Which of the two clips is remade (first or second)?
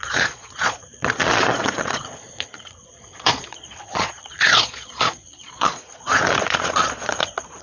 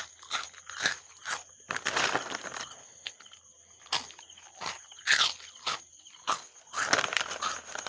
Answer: first